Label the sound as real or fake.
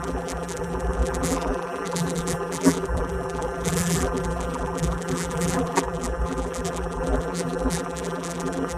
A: fake